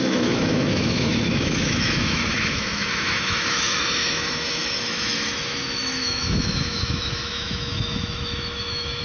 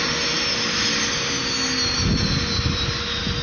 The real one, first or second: second